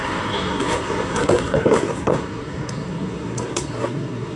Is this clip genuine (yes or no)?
no